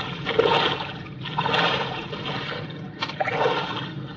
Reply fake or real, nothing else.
real